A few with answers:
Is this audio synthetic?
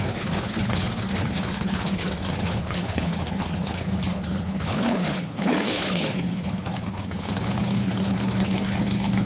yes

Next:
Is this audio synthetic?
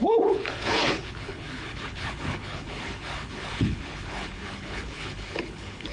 yes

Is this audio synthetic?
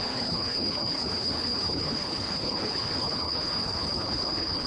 yes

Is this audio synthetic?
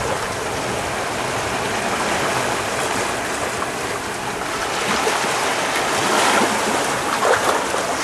no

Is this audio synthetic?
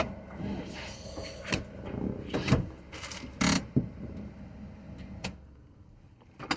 no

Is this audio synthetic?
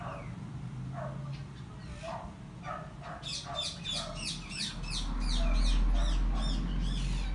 no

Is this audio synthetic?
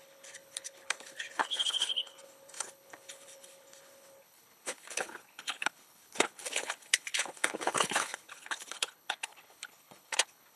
yes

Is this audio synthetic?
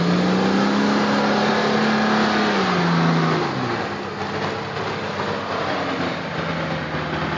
no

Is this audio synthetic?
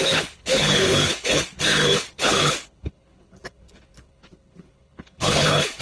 yes